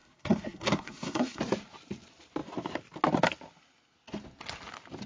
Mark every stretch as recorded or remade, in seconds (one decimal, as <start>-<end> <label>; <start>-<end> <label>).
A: 0.0-1.4 remade; 1.4-5.1 recorded